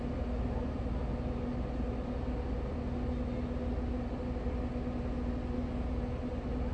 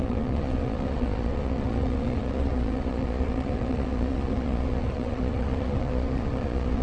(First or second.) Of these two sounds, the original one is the first